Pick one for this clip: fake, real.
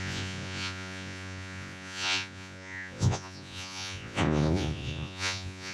fake